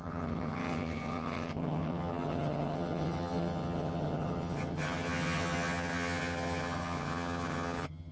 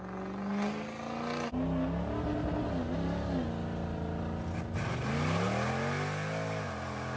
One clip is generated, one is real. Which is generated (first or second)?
first